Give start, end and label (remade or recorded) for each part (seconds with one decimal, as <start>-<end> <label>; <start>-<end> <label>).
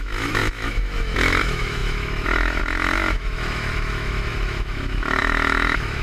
0.0-6.0 remade